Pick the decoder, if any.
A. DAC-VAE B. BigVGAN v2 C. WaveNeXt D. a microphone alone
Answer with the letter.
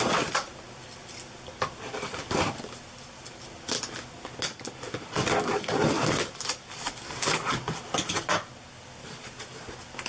D